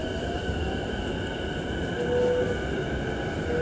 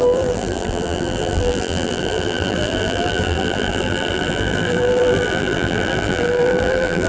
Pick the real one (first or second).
first